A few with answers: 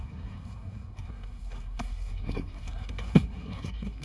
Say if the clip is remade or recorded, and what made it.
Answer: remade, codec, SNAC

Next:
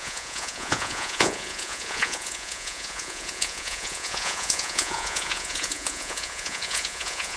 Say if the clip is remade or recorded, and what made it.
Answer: remade, vocoder, Vocos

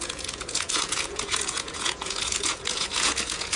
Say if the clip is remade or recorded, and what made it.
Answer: remade, vocoder, Vocos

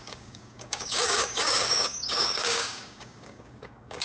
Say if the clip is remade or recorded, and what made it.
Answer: remade, codec, DAC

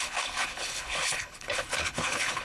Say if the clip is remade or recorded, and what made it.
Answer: remade, codec, HILCodec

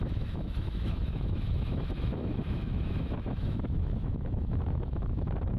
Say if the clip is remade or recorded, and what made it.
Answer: remade, autoencoder, DAC-VAE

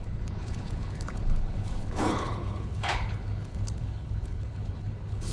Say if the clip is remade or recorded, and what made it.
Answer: remade, codec, HILCodec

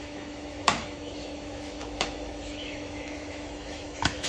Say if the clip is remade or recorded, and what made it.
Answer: remade, autoencoder, DAC-VAE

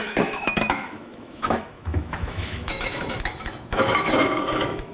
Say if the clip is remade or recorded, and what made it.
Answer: remade, autoencoder, DAC-VAE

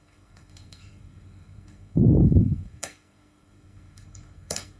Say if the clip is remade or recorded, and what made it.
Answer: remade, codec, SNAC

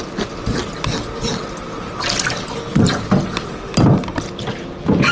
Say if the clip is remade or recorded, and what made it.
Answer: recorded